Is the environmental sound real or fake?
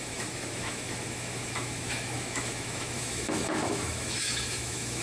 fake